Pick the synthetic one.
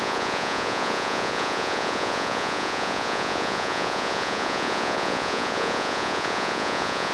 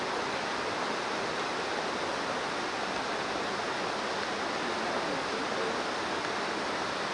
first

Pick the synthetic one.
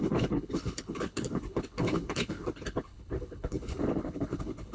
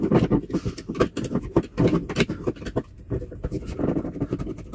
first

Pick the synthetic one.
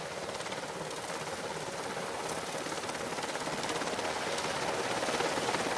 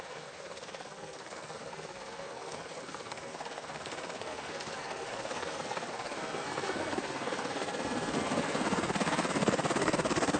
second